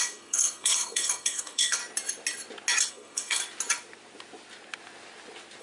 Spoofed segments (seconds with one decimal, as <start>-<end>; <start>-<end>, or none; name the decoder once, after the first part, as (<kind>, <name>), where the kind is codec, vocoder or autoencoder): 0.0-1.8 (codec, SNAC); 2.9-3.4